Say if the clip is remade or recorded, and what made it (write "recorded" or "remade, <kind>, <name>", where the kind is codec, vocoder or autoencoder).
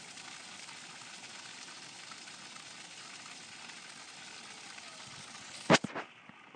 recorded